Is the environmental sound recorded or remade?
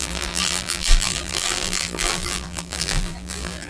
remade